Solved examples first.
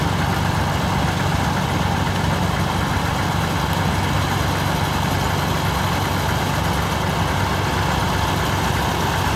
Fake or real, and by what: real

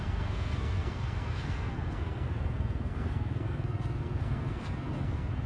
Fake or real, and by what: fake, codec, SNAC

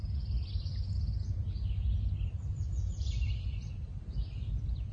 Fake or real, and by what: real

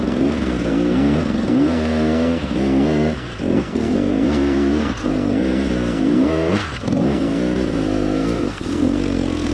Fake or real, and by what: fake, codec, SNAC